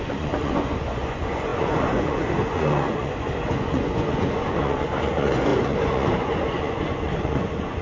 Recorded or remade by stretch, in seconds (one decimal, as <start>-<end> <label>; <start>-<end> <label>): 0.0-7.8 remade